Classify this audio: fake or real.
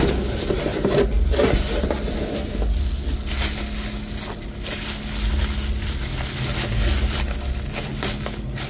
real